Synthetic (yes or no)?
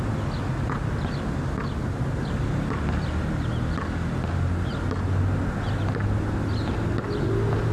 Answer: no